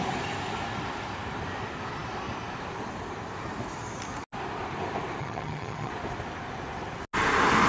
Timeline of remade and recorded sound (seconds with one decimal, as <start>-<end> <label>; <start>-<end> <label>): 0.0-5.2 recorded; 5.2-5.9 remade; 5.9-7.7 recorded